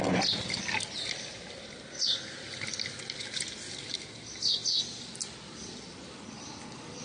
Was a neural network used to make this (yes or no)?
no